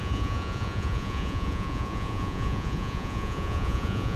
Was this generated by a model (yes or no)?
yes